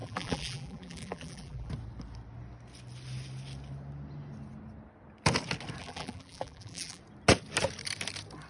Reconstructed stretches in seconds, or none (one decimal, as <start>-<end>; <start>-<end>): 0.0-1.7; 5.8-7.0